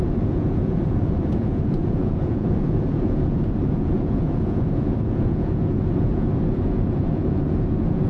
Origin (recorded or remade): remade